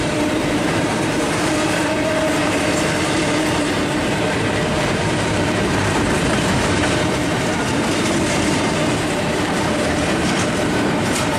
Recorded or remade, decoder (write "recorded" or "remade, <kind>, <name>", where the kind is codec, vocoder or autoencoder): remade, vocoder, BigVGAN v2